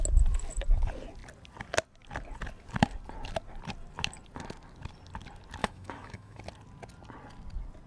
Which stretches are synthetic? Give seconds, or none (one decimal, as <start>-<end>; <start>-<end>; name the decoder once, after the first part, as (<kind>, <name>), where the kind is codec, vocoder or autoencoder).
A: 5.6-6.4 (autoencoder, DAC-VAE)